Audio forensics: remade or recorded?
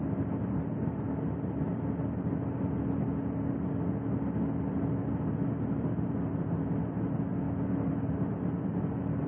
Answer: recorded